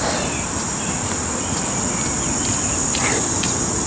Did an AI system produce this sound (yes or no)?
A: no